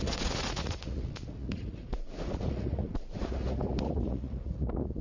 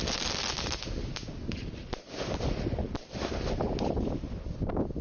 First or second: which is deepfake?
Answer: first